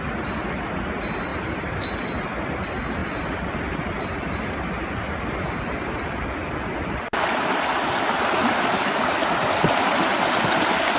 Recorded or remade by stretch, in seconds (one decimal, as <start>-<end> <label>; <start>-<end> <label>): 0.0-11.0 recorded

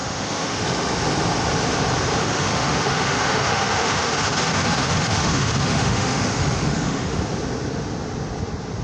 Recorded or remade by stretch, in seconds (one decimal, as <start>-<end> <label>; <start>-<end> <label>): 0.0-0.6 remade; 0.6-2.2 recorded; 2.2-7.2 remade; 7.2-8.8 recorded

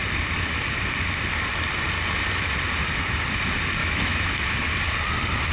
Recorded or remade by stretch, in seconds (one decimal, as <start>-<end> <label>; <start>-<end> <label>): 0.0-3.8 recorded; 3.8-4.3 remade; 4.3-5.5 recorded

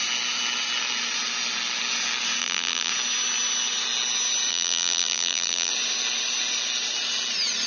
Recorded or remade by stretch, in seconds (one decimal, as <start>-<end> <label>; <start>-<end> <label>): 0.0-2.4 recorded; 2.4-2.9 remade; 2.9-4.5 recorded; 4.5-5.7 remade; 5.7-7.7 recorded